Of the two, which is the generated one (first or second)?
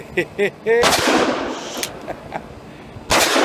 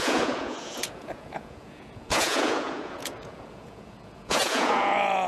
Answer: second